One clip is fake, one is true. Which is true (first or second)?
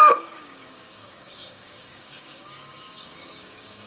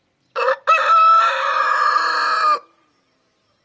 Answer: second